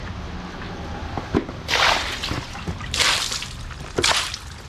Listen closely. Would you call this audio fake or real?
real